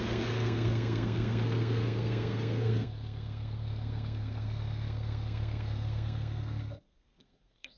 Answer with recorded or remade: remade